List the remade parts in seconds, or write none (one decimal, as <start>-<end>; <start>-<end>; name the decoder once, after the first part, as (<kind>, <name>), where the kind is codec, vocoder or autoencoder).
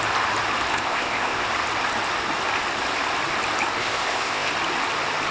0.7-1.4 (codec, ZipCodec); 3.8-4.5